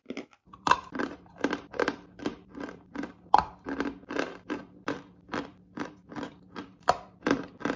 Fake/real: fake